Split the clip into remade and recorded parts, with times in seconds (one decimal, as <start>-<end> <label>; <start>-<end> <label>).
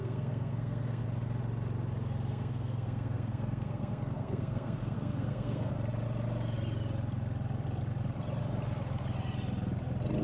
0.0-1.0 remade; 1.0-2.3 recorded; 2.3-5.7 remade; 5.7-10.2 recorded